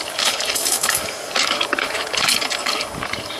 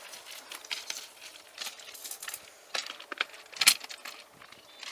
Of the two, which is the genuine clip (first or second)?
second